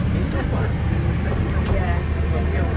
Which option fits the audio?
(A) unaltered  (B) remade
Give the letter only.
A